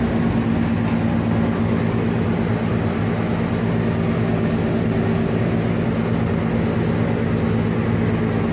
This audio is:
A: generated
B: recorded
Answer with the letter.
B